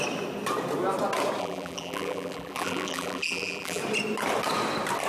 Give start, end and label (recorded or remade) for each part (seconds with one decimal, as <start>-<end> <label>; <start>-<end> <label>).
0.0-1.4 recorded; 1.4-3.8 remade; 3.8-5.1 recorded